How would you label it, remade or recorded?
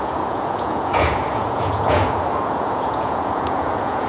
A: remade